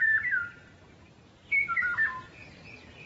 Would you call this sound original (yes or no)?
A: yes